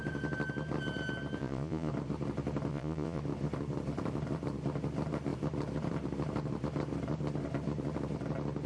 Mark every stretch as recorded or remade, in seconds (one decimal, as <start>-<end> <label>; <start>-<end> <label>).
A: 0.0-1.4 recorded; 1.4-1.9 remade; 1.9-2.7 recorded; 2.7-3.2 remade; 3.2-8.7 recorded